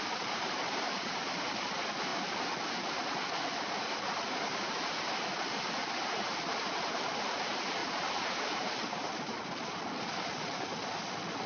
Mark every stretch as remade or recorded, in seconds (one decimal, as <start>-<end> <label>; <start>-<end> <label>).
0.0-5.8 recorded; 5.8-7.2 remade; 7.2-7.8 recorded; 7.8-9.7 remade; 9.7-11.5 recorded